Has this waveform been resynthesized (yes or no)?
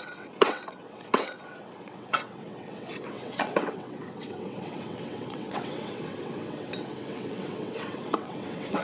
yes